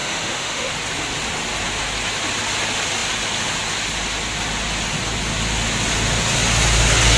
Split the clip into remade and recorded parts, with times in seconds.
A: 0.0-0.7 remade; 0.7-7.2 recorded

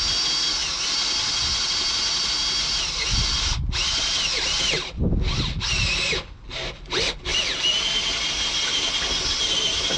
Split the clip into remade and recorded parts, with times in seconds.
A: 0.0-10.0 recorded

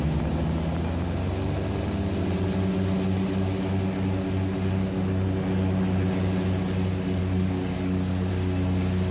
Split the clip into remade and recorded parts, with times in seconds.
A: 0.0-7.2 recorded; 7.2-8.3 remade; 8.3-9.1 recorded

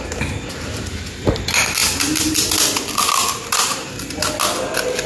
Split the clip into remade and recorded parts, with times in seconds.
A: 0.0-5.1 recorded

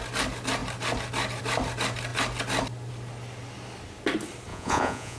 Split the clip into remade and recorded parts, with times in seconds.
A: 0.0-4.5 recorded; 4.5-5.2 remade

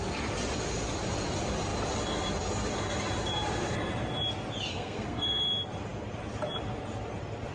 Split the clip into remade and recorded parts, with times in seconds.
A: 0.0-4.7 recorded; 4.7-5.5 remade; 5.5-7.5 recorded

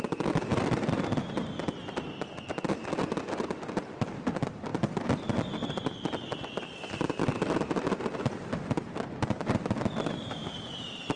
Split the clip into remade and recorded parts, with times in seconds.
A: 0.0-0.5 recorded; 0.5-1.5 remade; 1.5-10.4 recorded; 10.4-11.2 remade